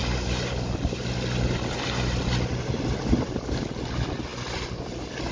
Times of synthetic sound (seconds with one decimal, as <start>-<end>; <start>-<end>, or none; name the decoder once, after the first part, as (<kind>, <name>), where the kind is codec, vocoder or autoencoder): none